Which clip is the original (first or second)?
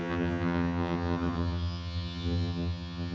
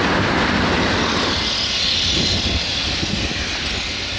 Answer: second